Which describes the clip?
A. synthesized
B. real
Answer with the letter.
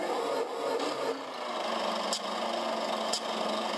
B